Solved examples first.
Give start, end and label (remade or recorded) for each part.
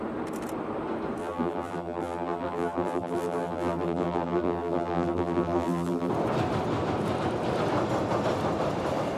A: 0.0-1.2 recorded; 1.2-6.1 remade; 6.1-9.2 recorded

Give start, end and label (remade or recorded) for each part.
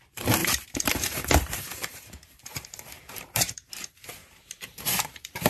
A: 0.0-0.4 recorded; 0.4-3.7 remade; 3.7-4.2 recorded; 4.2-5.5 remade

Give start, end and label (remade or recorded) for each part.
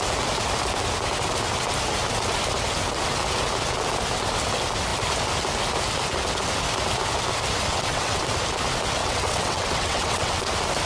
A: 0.0-7.7 recorded; 7.7-8.2 remade; 8.2-9.0 recorded; 9.0-10.5 remade; 10.5-10.9 recorded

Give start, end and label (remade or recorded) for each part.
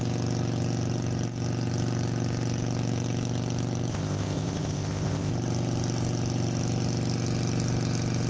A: 0.0-3.9 recorded; 3.9-5.3 remade; 5.3-8.3 recorded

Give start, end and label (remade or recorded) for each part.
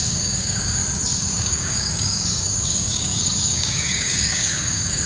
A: 0.0-0.8 remade; 0.8-1.3 recorded; 1.3-5.1 remade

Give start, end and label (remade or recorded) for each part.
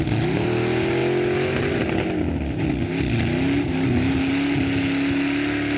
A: 0.0-5.8 recorded